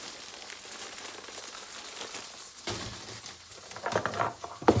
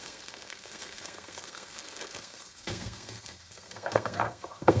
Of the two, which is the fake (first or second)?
second